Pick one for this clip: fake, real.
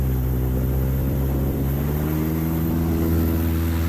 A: fake